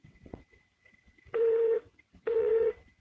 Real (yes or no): no